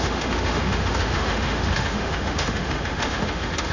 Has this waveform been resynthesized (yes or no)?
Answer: yes